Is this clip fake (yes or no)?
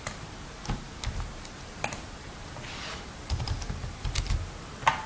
no